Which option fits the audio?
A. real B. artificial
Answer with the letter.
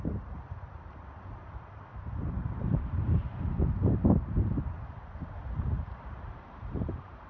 B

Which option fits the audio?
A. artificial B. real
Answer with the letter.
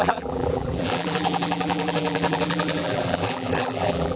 A